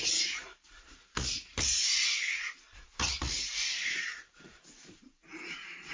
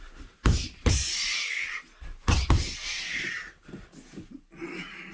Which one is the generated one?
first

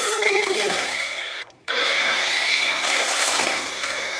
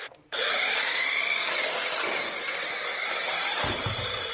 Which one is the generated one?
first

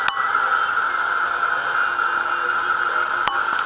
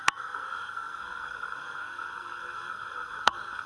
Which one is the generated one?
second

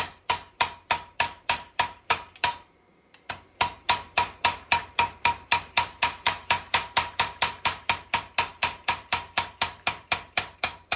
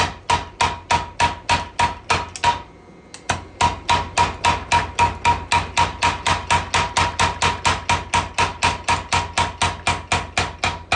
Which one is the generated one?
first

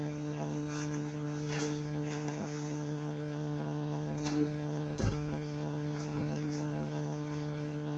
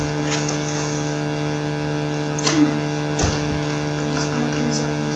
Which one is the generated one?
first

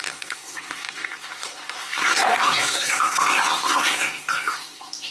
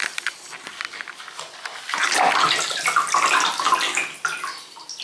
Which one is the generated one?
first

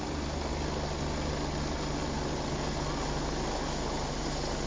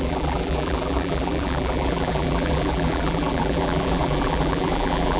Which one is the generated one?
second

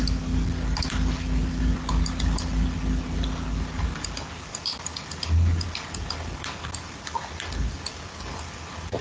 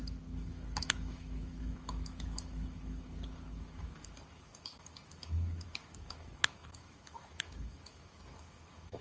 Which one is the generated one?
second